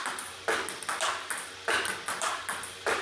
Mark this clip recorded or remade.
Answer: recorded